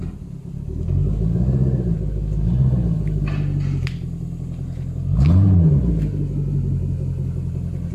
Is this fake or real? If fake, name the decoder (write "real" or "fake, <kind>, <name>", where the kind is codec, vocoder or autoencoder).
real